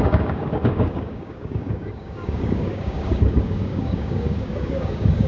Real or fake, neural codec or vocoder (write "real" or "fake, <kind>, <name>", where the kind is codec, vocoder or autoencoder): fake, codec, DAC